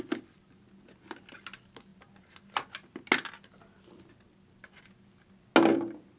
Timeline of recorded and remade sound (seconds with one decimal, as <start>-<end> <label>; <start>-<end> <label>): 0.0-6.2 recorded